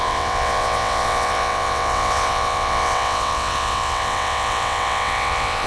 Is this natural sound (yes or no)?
no